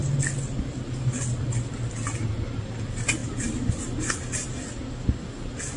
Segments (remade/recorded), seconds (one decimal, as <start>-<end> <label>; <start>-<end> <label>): 0.0-5.8 recorded